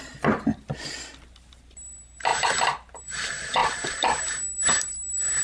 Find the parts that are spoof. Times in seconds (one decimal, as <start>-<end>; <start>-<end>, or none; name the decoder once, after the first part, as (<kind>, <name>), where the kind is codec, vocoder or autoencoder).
none